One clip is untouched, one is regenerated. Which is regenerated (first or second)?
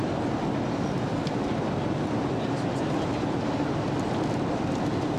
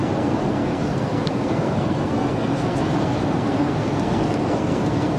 second